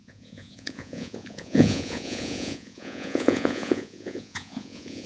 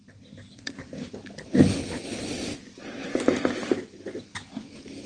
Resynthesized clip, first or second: first